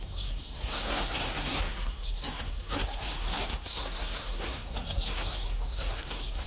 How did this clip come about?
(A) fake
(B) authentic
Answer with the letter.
A